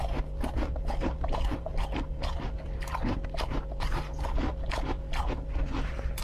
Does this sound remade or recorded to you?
recorded